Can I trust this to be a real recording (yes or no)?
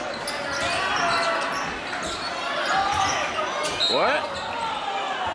yes